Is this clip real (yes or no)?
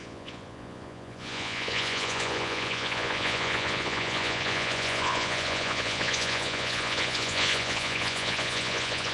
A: no